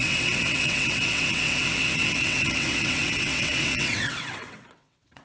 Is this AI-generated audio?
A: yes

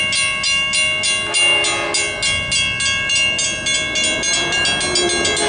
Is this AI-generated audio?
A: no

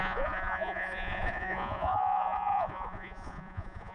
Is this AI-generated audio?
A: yes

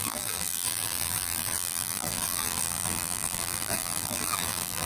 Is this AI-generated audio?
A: yes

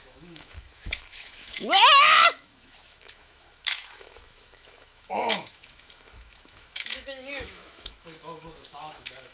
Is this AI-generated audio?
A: yes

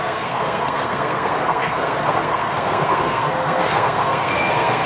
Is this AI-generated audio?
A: yes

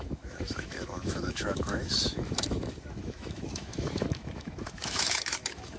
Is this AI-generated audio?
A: yes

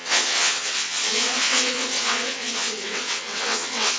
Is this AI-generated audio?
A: yes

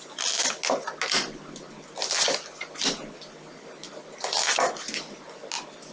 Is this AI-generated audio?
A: no